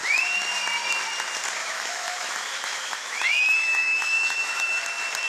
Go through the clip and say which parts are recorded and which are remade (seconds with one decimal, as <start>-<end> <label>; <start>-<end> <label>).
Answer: 0.0-1.6 recorded; 1.6-4.8 remade; 4.8-5.3 recorded